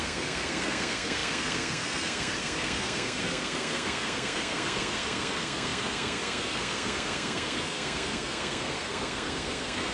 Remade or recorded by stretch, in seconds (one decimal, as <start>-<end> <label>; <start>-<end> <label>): 0.0-9.9 remade